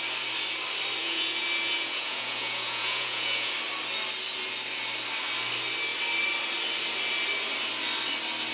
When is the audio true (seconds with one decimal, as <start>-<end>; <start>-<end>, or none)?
0.0-1.0; 3.5-8.5